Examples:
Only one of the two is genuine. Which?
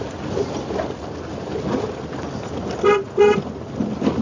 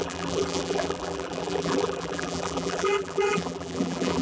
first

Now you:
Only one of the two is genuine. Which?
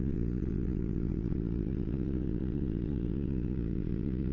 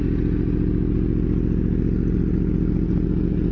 second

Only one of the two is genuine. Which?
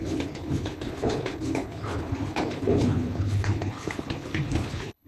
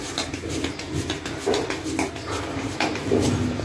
second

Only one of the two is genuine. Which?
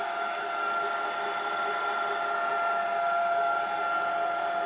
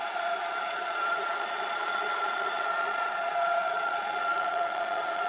first